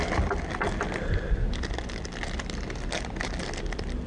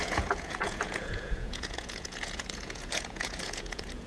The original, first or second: first